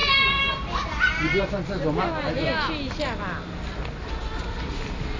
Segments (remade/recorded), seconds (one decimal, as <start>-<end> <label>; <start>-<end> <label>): 0.0-5.2 recorded